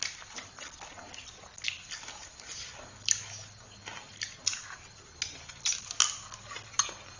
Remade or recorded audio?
recorded